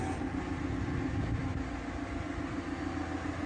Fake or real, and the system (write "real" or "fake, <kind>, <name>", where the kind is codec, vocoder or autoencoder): real